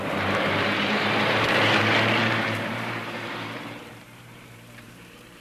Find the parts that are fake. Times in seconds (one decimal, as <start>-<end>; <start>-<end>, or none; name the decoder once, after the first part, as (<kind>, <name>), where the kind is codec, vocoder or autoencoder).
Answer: 0.0-5.4 (vocoder, BigVGAN v2)